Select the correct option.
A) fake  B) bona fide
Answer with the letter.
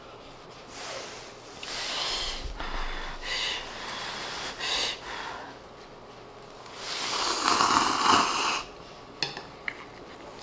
B